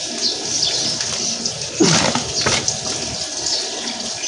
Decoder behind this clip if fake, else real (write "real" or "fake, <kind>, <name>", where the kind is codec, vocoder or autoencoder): real